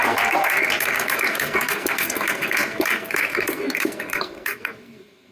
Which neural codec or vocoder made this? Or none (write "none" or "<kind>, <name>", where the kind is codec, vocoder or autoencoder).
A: codec, SNAC